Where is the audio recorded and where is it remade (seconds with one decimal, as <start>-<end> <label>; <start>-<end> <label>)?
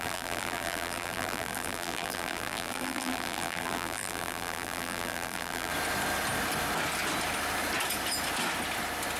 0.0-5.7 remade; 5.7-9.2 recorded